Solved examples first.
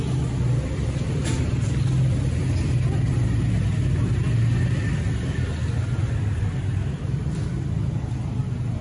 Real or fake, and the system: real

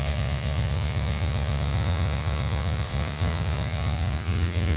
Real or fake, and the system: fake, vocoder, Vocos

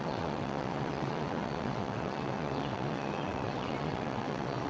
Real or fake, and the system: fake, vocoder, WaveNeXt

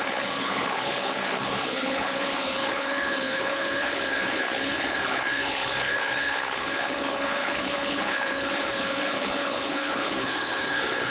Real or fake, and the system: fake, codec, HILCodec